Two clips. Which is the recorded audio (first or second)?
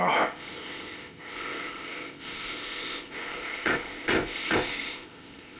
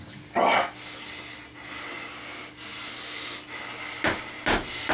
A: second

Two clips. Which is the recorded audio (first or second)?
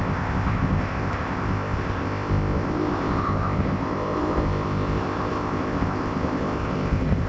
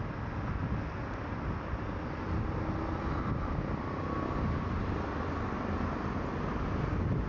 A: second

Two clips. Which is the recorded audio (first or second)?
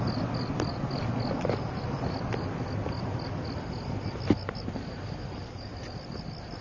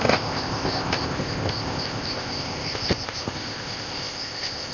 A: first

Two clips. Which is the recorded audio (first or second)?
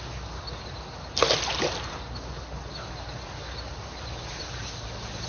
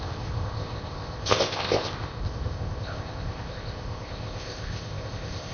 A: first